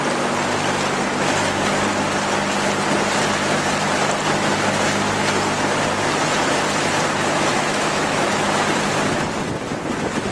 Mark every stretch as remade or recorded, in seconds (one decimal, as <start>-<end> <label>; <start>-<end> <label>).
0.0-7.5 recorded; 7.5-8.4 remade; 8.4-10.3 recorded

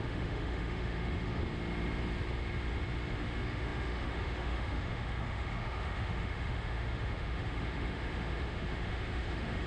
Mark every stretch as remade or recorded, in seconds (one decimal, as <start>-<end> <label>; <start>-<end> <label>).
0.0-1.4 remade; 1.4-3.2 recorded; 3.2-9.7 remade

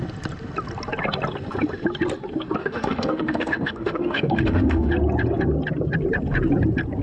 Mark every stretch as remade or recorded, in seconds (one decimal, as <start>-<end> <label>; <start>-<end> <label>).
0.0-2.6 recorded; 2.6-4.9 remade; 4.9-7.0 recorded

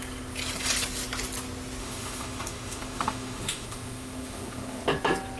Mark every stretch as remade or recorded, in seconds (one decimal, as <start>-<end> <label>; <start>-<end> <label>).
0.0-1.8 recorded; 1.8-4.8 remade; 4.8-5.4 recorded

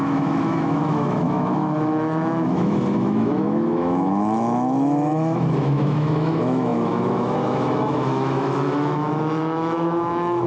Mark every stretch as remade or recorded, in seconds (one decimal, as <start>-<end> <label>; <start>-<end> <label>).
0.0-10.5 remade

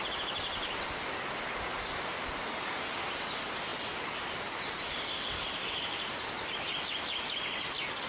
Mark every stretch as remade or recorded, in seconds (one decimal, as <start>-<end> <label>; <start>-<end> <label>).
0.0-8.1 recorded

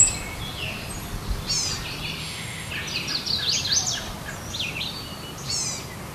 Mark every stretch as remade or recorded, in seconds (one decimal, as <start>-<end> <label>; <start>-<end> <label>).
0.0-2.2 recorded; 2.2-2.7 remade; 2.7-6.1 recorded

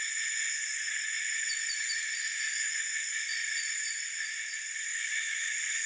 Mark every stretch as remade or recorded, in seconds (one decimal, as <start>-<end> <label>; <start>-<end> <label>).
0.0-4.9 recorded; 4.9-5.5 remade; 5.5-5.9 recorded